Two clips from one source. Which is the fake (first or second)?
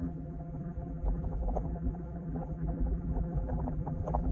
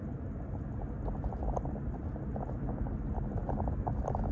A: first